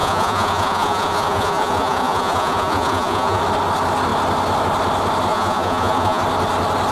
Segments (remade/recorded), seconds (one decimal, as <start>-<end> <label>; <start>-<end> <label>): 0.0-3.4 remade; 3.4-5.3 recorded; 5.3-6.2 remade; 6.2-6.9 recorded